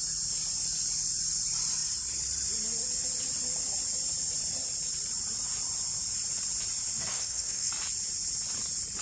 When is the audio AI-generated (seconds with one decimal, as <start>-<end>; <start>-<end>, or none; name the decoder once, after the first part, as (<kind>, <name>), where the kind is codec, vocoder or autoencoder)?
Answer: 7.1-7.7 (codec, SNAC)